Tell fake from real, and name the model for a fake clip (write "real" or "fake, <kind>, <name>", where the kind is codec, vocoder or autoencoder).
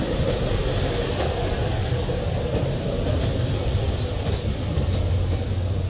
fake, vocoder, BigVGAN v2